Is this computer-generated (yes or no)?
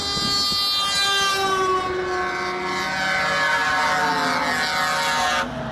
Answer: no